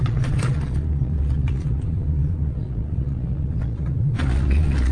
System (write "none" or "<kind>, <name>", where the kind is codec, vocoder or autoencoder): vocoder, Vocos